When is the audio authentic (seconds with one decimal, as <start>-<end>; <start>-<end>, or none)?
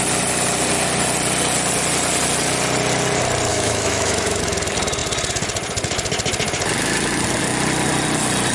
0.0-3.5; 4.4-8.5